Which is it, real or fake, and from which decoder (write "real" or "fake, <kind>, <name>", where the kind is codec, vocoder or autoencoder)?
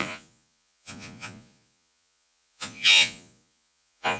fake, vocoder, Vocos